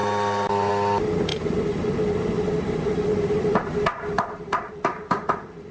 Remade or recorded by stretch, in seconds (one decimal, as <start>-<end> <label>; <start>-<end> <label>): 0.0-0.7 remade; 0.7-1.3 recorded; 1.3-4.7 remade; 4.7-5.7 recorded